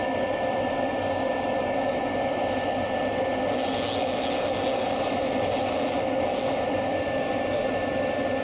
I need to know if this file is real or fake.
real